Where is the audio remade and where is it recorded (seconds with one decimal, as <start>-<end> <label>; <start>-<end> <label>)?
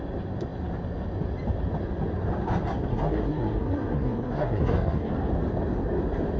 0.0-2.9 recorded; 2.9-5.1 remade; 5.1-6.4 recorded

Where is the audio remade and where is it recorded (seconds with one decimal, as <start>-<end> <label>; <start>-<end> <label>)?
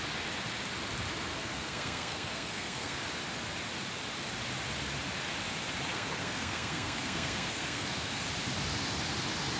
0.0-1.3 recorded; 1.3-3.0 remade; 3.0-5.9 recorded; 5.9-8.2 remade; 8.2-9.6 recorded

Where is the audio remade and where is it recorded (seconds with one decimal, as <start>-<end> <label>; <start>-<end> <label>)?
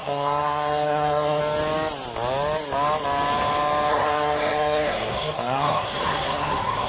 0.0-1.4 remade; 1.4-3.9 recorded; 3.9-6.9 remade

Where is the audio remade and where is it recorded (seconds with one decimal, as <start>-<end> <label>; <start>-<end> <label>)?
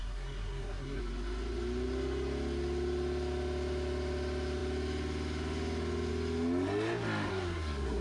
0.0-1.0 remade; 1.0-7.3 recorded; 7.3-8.0 remade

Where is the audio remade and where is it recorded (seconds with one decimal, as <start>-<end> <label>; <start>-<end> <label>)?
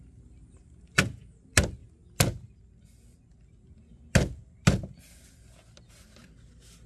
0.0-6.9 recorded